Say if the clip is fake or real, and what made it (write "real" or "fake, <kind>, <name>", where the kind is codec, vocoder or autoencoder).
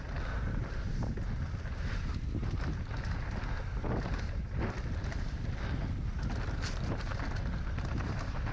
real